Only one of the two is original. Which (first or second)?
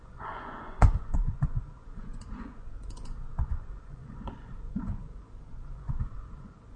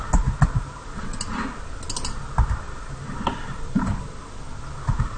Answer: second